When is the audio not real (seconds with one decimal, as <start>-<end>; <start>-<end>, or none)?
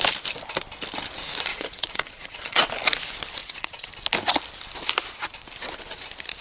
1.5-2.7; 3.4-3.9